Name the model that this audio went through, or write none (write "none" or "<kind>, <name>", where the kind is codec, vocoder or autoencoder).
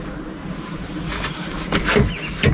none